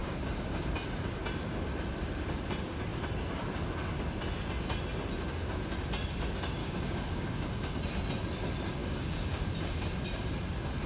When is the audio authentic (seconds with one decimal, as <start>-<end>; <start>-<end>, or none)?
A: 0.6-6.6; 7.7-8.8; 9.5-10.9